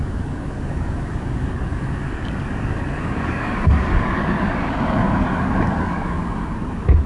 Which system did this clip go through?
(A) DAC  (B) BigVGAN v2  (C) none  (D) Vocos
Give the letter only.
A